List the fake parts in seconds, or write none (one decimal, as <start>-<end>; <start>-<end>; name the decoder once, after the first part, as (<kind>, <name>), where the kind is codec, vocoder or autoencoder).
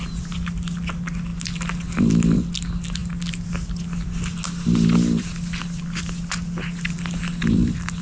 none